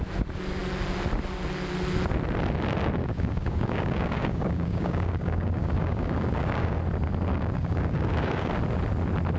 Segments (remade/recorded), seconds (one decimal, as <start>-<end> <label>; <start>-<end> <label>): 0.0-3.0 recorded; 3.0-6.8 remade; 6.8-7.3 recorded; 7.3-8.5 remade; 8.5-9.4 recorded